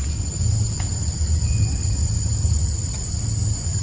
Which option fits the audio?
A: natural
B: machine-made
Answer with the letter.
A